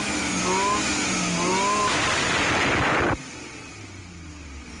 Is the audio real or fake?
real